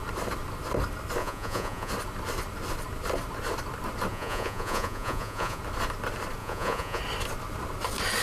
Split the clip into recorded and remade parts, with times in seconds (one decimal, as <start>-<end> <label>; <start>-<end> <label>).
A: 0.0-1.2 recorded; 1.2-1.9 remade; 1.9-4.1 recorded; 4.1-5.6 remade; 5.6-6.4 recorded; 6.4-7.0 remade; 7.0-8.2 recorded